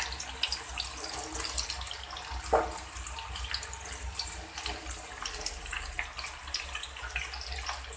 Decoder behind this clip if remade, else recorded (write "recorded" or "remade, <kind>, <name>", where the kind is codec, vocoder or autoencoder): recorded